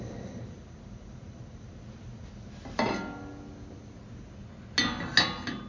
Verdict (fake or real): real